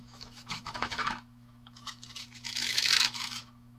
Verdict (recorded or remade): remade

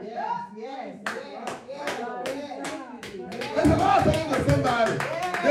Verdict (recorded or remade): remade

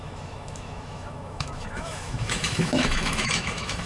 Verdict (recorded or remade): remade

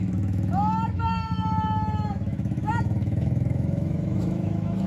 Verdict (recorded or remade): remade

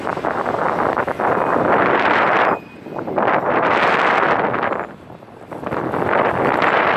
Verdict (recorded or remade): recorded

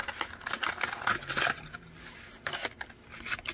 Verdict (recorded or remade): recorded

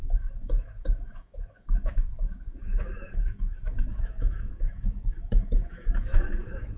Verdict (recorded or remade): remade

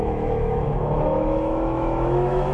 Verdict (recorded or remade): remade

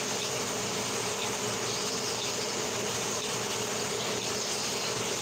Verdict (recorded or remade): recorded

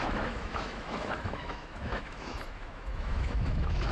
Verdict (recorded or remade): remade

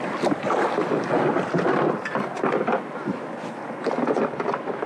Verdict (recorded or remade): recorded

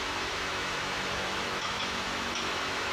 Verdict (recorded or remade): remade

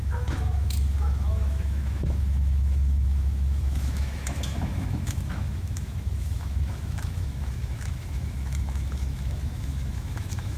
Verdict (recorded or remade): remade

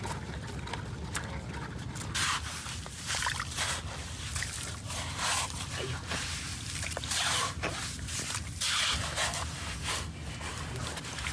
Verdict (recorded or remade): recorded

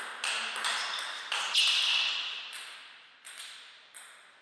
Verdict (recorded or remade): recorded